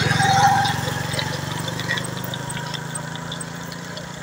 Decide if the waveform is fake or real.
real